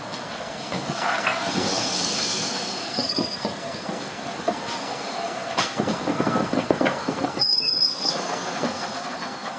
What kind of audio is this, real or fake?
fake